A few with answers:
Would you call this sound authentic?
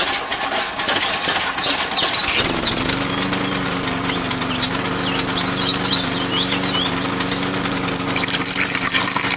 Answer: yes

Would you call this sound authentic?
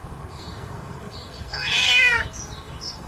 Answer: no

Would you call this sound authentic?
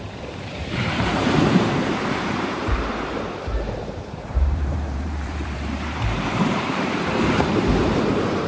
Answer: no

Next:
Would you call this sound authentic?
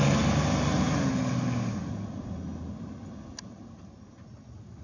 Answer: yes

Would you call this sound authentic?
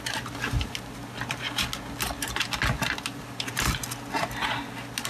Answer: yes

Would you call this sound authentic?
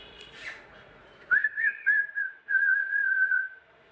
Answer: no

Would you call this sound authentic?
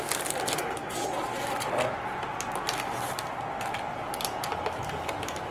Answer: yes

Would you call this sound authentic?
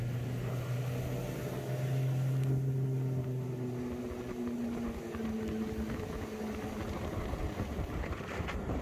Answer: yes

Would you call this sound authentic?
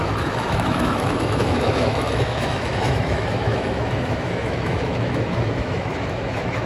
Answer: no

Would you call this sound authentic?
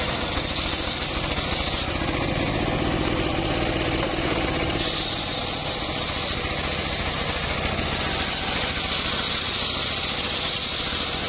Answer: yes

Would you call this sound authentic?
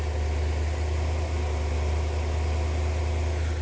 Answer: yes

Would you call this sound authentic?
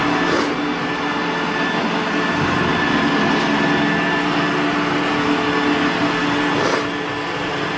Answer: yes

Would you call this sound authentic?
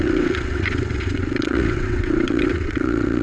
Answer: no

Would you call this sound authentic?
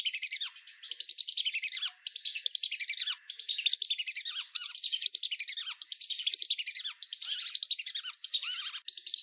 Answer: yes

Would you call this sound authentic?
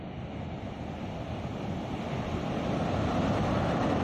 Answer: yes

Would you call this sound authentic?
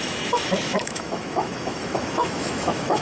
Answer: no